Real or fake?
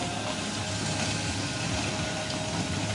real